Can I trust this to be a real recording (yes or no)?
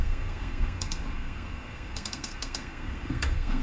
no